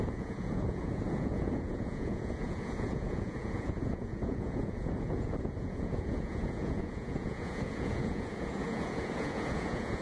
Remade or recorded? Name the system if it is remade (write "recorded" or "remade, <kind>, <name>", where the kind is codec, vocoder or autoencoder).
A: remade, vocoder, Vocos